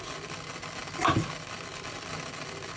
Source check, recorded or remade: recorded